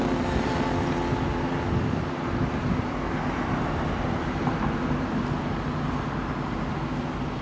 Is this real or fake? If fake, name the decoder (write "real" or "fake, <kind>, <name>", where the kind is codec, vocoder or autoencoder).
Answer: real